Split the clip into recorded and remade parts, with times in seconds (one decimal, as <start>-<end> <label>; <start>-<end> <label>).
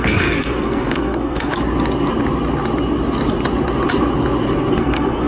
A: 0.0-1.5 remade; 1.5-4.7 recorded; 4.7-5.3 remade